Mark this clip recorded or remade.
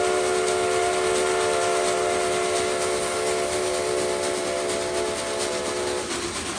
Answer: recorded